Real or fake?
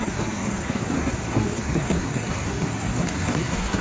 fake